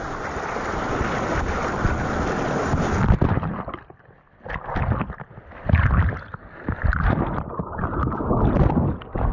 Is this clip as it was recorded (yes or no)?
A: yes